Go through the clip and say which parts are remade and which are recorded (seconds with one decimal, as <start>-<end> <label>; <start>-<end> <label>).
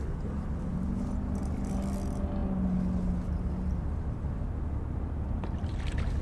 0.0-6.2 recorded